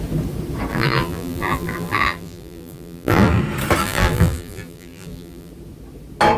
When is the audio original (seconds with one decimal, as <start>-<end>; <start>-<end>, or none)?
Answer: 0.0-0.7; 3.4-3.8; 5.5-6.4